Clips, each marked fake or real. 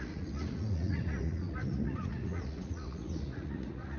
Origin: fake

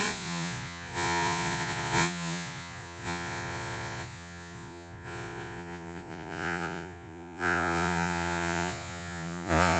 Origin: fake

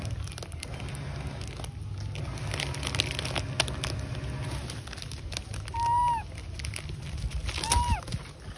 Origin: real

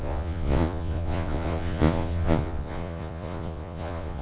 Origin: fake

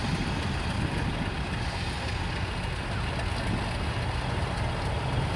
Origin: real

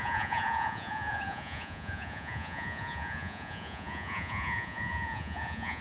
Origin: fake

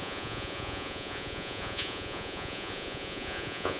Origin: fake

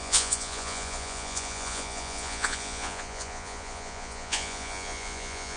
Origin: fake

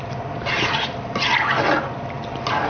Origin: real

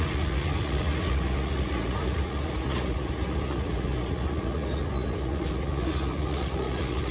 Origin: fake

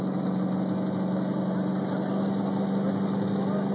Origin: real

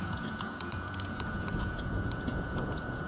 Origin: fake